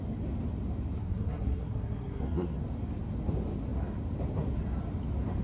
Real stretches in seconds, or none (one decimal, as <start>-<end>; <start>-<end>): 0.0-1.0; 2.6-5.4